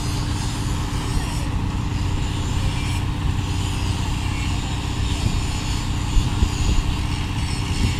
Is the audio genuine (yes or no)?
yes